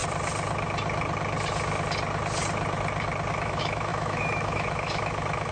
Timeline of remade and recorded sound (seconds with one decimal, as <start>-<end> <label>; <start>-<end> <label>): 0.0-3.3 recorded; 3.3-5.5 remade